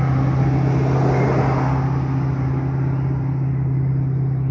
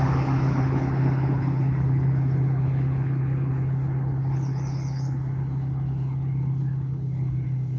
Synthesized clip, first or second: second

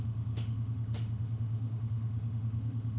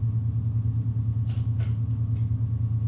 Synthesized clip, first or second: first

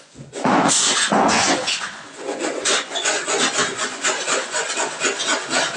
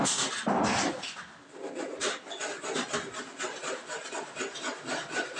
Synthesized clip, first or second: first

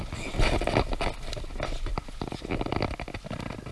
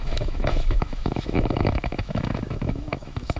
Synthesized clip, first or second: second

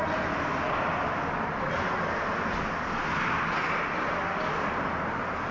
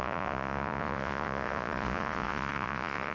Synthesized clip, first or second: second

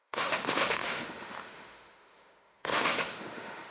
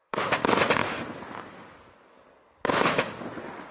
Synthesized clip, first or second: first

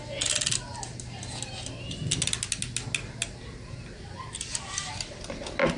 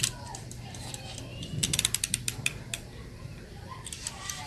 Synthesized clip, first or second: second